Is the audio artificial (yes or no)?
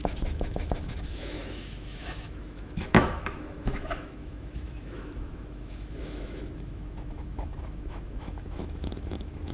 yes